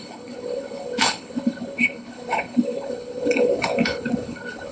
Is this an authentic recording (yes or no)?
no